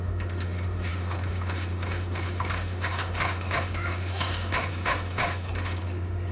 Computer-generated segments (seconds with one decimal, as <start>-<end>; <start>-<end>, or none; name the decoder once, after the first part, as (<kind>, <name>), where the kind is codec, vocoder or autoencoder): 0.0-6.3 (autoencoder, DAC-VAE)